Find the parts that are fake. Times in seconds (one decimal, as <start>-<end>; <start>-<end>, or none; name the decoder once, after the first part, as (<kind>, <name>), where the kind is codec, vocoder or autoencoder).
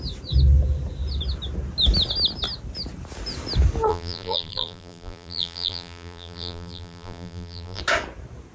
3.9-7.8 (vocoder, BigVGAN v2)